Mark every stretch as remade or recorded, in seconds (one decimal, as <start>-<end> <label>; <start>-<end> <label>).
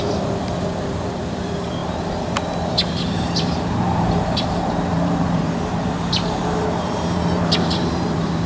0.0-1.8 remade; 1.8-3.1 recorded; 3.1-8.5 remade